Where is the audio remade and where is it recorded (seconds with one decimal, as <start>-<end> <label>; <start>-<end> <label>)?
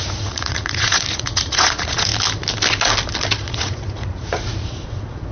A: 0.0-2.1 remade; 2.1-3.4 recorded; 3.4-5.3 remade